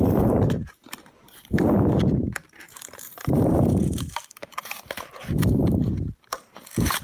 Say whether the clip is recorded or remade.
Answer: remade